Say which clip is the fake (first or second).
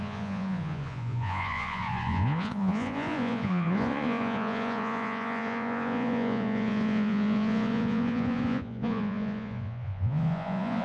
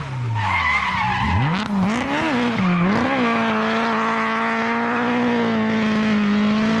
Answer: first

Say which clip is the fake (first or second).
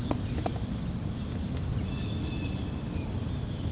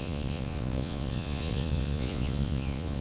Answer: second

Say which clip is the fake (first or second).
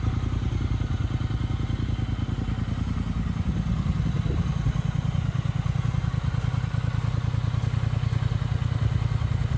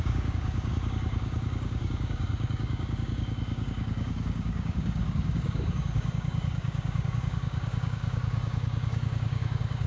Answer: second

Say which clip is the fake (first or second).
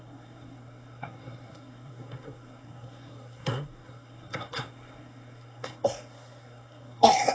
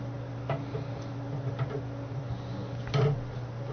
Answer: first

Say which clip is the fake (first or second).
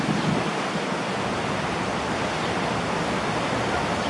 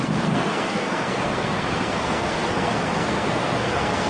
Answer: second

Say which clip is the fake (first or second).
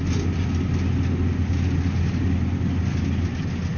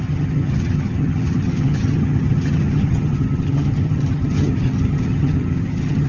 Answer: second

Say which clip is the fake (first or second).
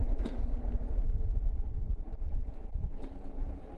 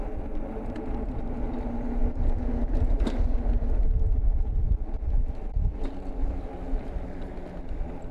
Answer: first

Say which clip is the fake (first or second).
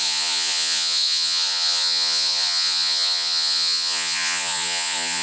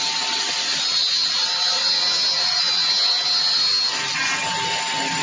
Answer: first